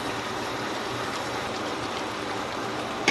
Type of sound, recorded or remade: remade